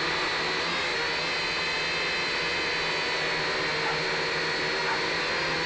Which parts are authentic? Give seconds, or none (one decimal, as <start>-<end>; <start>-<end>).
0.0-5.7